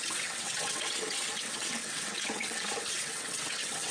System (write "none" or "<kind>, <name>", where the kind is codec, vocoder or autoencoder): vocoder, WaveNeXt